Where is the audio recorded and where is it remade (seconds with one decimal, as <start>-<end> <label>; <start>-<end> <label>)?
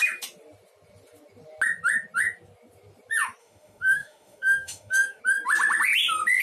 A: 0.0-3.4 recorded; 3.4-5.2 remade; 5.2-6.4 recorded